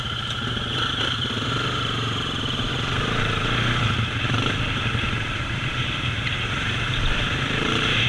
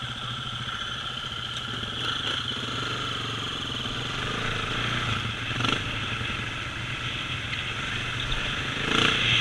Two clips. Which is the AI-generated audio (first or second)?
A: first